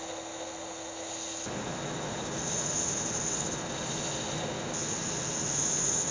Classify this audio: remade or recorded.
recorded